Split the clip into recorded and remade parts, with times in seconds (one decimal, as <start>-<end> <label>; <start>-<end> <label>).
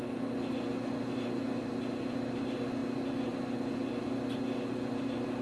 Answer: 0.0-5.4 recorded